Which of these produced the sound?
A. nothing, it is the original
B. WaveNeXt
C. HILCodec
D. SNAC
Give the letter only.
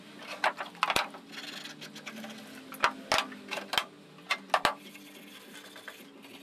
A